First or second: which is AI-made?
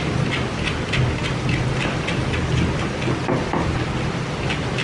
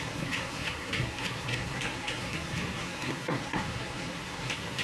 second